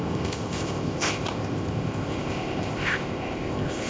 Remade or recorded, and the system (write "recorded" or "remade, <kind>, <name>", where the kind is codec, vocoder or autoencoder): remade, codec, ZipCodec